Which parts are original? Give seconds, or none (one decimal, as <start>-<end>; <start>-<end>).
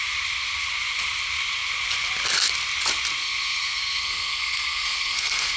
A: 0.0-3.2